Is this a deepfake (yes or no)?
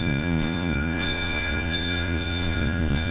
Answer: yes